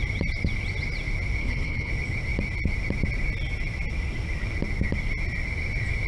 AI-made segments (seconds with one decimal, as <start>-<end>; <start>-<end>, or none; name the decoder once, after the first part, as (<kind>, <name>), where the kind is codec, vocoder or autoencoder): 1.4-1.9 (codec, HILCodec)